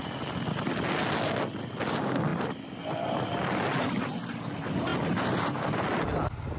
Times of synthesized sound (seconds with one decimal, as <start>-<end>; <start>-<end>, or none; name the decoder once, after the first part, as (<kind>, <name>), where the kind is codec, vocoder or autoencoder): none